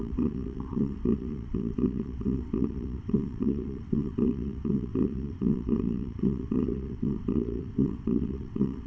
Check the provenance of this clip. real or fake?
fake